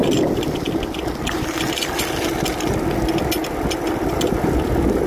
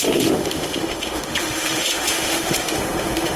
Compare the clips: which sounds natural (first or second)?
first